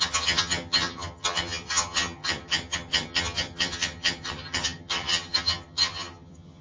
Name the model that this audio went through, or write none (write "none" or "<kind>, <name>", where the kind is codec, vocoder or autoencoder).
vocoder, HiFi-GAN